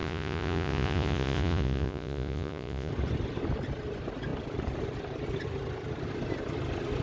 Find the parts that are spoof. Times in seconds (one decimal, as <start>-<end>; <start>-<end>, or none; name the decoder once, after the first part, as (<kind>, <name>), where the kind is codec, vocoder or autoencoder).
0.0-2.9 (vocoder, Vocos)